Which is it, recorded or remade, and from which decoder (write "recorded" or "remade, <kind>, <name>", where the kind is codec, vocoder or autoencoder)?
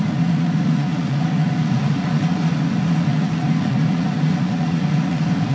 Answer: remade, vocoder, Vocos